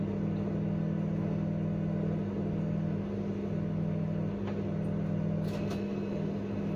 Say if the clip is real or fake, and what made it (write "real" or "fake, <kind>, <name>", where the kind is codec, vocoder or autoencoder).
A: real